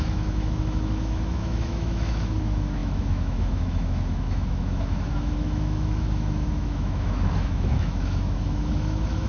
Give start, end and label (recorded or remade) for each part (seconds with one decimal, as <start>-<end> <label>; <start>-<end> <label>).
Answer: 0.0-9.3 remade